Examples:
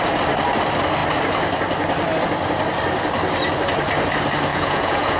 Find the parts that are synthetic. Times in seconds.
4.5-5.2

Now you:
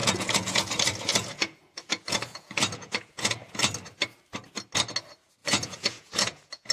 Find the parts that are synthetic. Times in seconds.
0.0-0.6; 1.1-3.6; 5.4-6.7

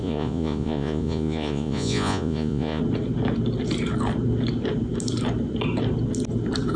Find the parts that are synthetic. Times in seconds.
0.0-2.8

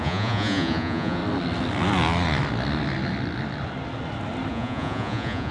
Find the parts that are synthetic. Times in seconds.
0.0-1.2; 4.5-5.5

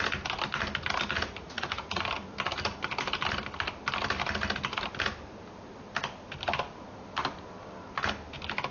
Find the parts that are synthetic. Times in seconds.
1.4-2.0

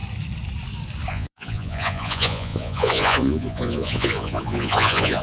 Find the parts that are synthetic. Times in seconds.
1.1-5.2

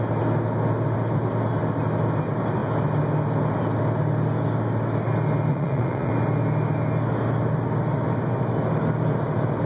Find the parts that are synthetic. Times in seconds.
5.5-6.1

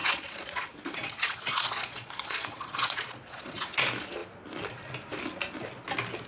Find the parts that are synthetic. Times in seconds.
0.0-3.8